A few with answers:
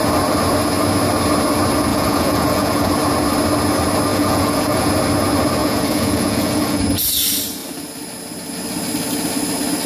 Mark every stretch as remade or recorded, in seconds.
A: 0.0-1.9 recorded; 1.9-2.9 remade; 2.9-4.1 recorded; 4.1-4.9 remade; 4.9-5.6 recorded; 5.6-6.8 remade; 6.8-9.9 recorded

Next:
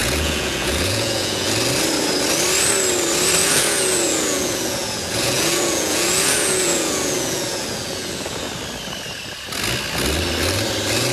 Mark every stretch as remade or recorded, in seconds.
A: 0.0-1.5 remade; 1.5-3.4 recorded; 3.4-8.5 remade; 8.5-11.1 recorded

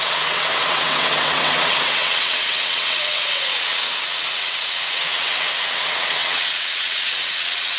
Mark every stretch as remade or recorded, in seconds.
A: 0.0-7.8 remade

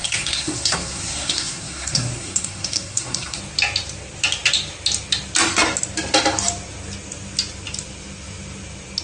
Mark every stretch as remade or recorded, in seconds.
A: 0.0-3.4 remade; 3.4-9.0 recorded

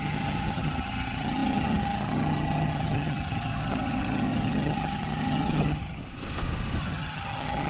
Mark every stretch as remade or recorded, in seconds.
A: 0.0-6.0 remade; 6.0-6.8 recorded; 6.8-7.7 remade

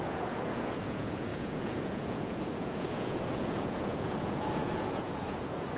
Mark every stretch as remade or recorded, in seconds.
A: 0.0-5.8 remade

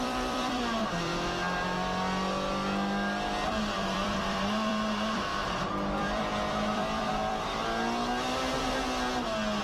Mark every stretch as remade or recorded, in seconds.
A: 0.0-1.1 remade; 1.1-3.5 recorded; 3.5-7.6 remade; 7.6-9.6 recorded